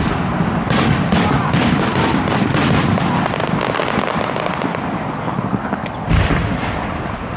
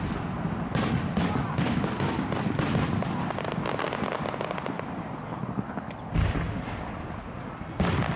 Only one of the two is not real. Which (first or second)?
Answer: first